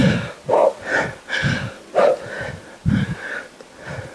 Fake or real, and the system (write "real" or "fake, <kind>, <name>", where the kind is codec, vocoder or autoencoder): real